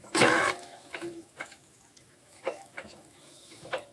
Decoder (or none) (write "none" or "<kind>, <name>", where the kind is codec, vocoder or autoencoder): autoencoder, DAC-VAE